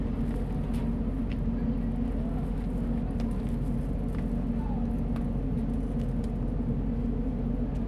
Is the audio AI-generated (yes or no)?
no